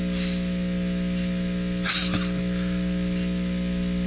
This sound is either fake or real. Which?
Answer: real